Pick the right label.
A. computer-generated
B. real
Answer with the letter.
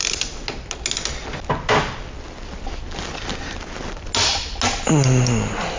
B